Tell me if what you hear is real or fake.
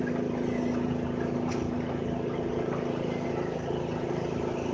real